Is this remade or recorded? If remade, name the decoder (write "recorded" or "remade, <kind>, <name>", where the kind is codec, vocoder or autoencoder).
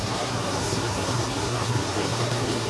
remade, codec, SNAC